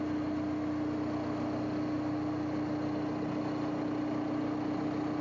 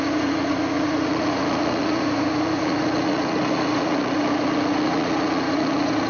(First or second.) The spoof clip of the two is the second